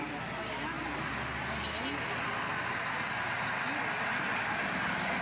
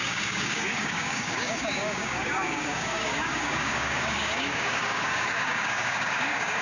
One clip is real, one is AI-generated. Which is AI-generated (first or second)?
second